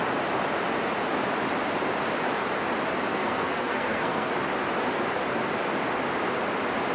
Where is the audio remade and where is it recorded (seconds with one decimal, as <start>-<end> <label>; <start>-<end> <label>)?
0.0-3.1 recorded; 3.1-4.3 remade; 4.3-6.9 recorded